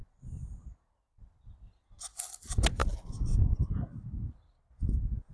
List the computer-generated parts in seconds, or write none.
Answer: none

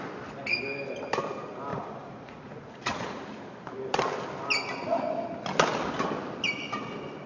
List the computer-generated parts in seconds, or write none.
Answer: 1.7-3.2 (vocoder, Vocos)

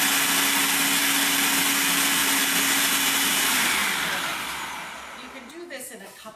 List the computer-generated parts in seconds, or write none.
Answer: none

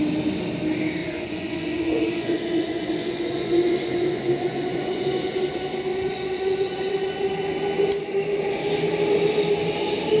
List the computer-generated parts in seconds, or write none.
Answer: 1.0-5.4 (vocoder, Vocos); 5.9-6.7

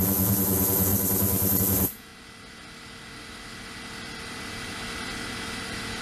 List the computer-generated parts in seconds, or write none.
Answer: 0.0-0.9 (vocoder, Vocos); 1.6-2.1

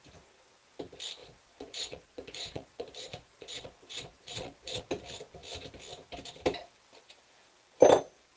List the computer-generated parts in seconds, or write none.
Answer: 1.2-4.8 (vocoder, Vocos)

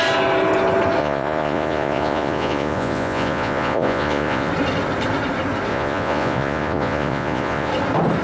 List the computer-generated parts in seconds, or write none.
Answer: 1.0-4.5 (vocoder, Vocos); 5.7-7.7

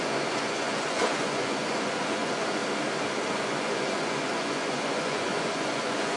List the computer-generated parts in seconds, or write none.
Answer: 0.0-2.6 (vocoder, Vocos); 3.3-6.2